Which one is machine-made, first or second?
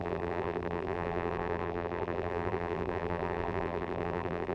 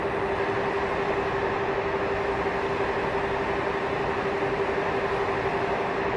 first